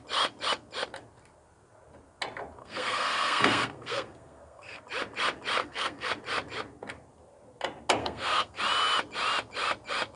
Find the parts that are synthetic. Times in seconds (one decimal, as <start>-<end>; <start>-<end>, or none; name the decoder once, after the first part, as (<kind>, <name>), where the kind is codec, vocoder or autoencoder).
2.6-4.8 (codec, SNAC); 5.6-6.1; 8.0-8.6